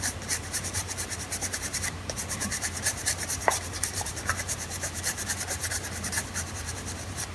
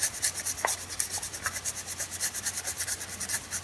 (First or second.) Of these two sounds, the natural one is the second